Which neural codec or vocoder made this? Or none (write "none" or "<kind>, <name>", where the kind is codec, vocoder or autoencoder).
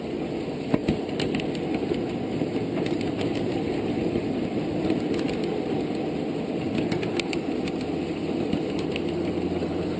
none